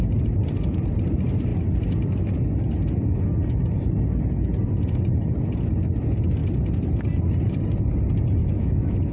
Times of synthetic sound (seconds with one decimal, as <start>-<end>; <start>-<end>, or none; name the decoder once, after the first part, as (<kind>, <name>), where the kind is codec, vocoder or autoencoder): 8.4-9.1 (autoencoder, DAC-VAE)